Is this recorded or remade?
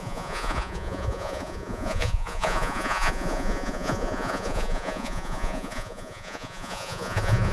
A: remade